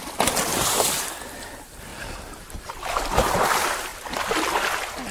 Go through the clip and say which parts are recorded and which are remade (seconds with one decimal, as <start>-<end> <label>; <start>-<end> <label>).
0.0-0.5 recorded; 0.5-1.2 remade; 1.2-5.1 recorded